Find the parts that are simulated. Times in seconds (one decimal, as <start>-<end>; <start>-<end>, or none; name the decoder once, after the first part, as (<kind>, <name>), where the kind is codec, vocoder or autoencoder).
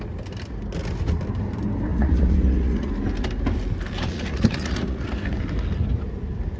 1.9-2.9 (vocoder, Vocos); 4.0-5.1